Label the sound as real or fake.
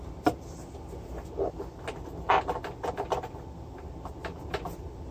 real